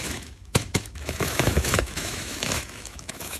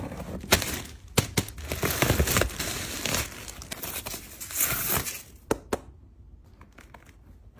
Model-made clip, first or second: first